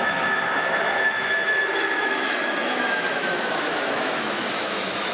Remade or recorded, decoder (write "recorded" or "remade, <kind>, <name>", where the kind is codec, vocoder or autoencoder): remade, autoencoder, DAC-VAE